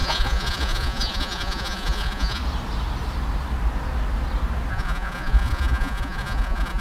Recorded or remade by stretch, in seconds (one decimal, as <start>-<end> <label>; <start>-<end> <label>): 0.0-2.4 remade; 2.4-4.7 recorded; 4.7-6.8 remade